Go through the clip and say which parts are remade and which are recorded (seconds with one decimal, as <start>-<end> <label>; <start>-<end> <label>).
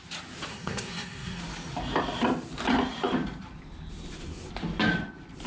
0.0-0.5 recorded; 0.5-1.4 remade; 1.4-5.5 recorded